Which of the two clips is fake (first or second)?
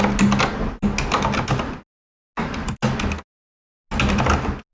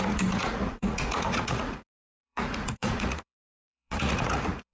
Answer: second